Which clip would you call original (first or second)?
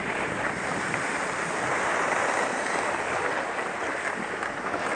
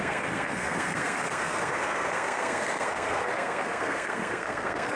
first